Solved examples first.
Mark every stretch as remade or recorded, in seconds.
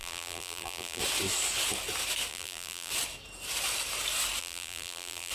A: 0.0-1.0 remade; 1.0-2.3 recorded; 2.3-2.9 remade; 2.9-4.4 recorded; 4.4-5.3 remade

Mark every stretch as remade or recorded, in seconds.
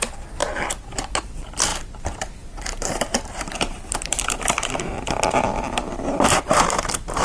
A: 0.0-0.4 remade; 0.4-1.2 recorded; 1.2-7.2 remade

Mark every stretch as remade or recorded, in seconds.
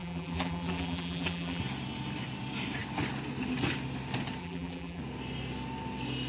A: 0.0-1.6 remade; 1.6-4.4 recorded; 4.4-5.0 remade; 5.0-6.3 recorded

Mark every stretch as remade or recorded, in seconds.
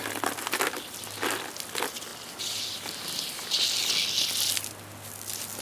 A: 0.0-5.6 recorded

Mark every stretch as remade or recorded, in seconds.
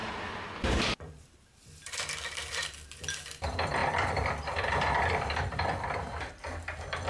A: 0.0-3.0 remade; 3.0-3.8 recorded; 3.8-6.3 remade; 6.3-7.1 recorded